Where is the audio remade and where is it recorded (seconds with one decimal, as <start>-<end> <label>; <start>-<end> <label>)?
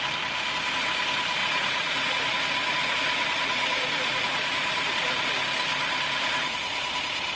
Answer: 0.0-1.4 recorded; 1.4-2.1 remade; 2.1-2.6 recorded; 2.6-5.0 remade; 5.0-7.4 recorded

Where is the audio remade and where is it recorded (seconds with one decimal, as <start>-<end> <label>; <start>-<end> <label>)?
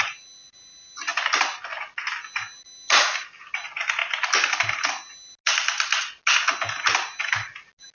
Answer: 0.0-7.9 recorded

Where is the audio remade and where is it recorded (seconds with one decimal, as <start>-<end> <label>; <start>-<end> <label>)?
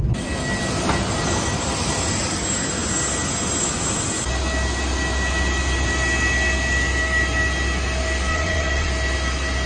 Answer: 0.0-8.3 recorded; 8.3-8.9 remade; 8.9-9.7 recorded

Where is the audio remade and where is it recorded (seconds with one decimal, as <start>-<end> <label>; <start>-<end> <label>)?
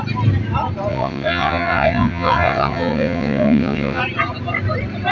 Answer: 0.0-0.9 recorded; 0.9-4.0 remade; 4.0-5.1 recorded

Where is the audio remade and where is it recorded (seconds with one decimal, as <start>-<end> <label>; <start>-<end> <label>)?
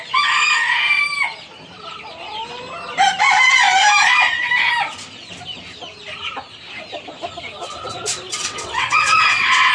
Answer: 0.0-8.3 recorded; 8.3-9.7 remade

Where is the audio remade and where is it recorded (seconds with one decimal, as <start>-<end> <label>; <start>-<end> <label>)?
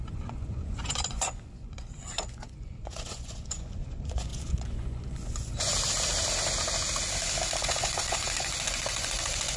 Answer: 0.0-5.7 remade; 5.7-7.6 recorded; 7.6-9.6 remade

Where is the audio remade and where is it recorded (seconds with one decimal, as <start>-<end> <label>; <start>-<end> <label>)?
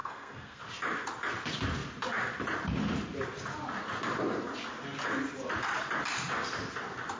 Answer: 0.0-0.6 remade; 0.6-7.2 recorded